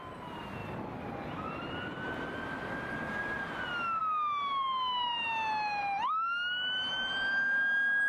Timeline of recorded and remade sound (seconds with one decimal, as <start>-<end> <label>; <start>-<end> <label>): 0.0-8.1 recorded